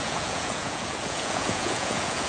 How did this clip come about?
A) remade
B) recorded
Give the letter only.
A